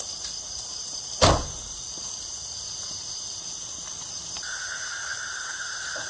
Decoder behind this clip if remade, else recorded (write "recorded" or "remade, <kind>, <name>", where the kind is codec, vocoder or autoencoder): recorded